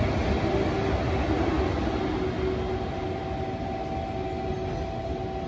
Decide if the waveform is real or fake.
real